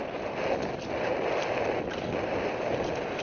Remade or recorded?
recorded